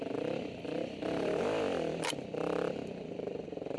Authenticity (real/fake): fake